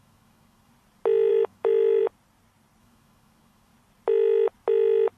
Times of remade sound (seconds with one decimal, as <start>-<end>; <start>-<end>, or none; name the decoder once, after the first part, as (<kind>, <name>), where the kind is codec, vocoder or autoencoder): 0.0-0.7 (autoencoder, DAC-VAE); 1.3-2.0; 2.8-3.7